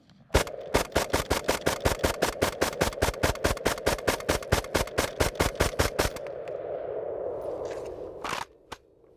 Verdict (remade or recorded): recorded